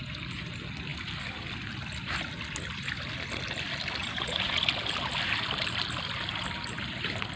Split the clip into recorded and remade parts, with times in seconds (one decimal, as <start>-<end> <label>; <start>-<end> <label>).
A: 0.0-4.0 recorded; 4.0-4.6 remade; 4.6-7.4 recorded